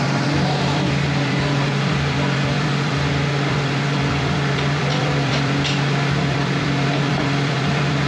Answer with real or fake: fake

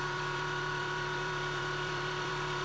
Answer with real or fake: fake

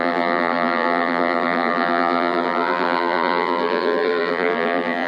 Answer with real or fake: fake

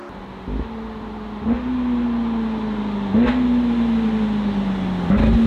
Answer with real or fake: real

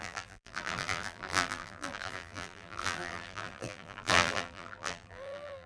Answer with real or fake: fake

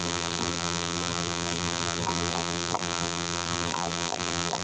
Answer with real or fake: fake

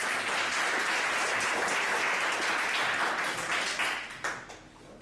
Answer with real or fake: real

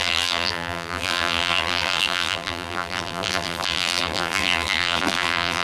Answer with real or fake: fake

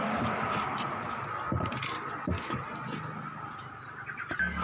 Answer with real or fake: real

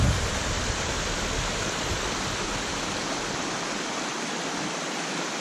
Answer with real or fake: fake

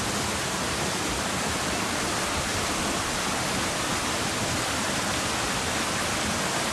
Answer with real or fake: real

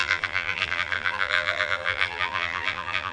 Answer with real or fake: fake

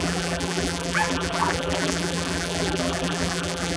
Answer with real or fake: fake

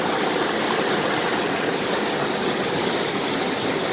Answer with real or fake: fake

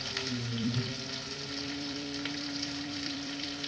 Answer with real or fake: fake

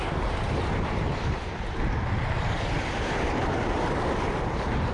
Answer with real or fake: fake